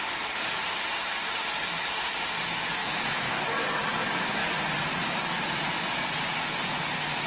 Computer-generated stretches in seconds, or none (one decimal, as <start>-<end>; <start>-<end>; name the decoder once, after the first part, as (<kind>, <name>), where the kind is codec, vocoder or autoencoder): 2.8-3.3 (autoencoder, DAC-VAE)